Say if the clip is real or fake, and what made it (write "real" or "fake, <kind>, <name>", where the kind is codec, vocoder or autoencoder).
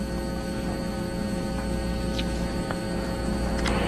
real